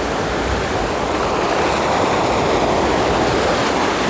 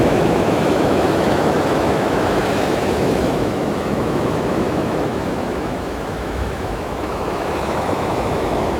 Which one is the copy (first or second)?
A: second